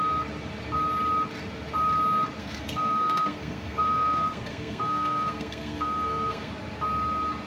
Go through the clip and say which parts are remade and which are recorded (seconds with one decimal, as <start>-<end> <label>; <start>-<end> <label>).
0.0-2.4 recorded; 2.4-6.5 remade; 6.5-7.5 recorded